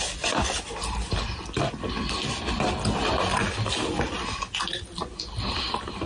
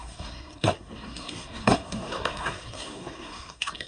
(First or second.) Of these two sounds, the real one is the first